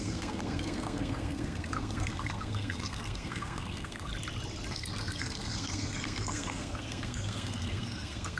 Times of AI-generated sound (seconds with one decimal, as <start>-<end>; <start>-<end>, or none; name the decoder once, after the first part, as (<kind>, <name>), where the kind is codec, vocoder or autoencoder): 0.0-4.1 (codec, SNAC); 4.7-8.4